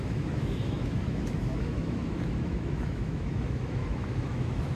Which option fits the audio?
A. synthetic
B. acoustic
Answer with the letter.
A